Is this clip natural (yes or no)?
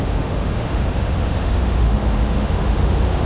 no